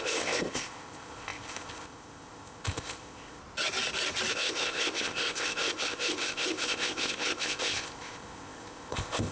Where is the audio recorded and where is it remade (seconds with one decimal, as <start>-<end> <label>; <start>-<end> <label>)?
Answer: 0.0-3.4 remade; 3.4-4.3 recorded; 4.3-9.3 remade